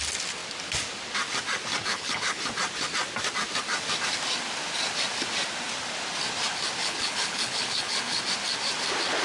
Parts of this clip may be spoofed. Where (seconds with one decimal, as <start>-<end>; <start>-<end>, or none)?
1.8-2.4; 6.8-8.2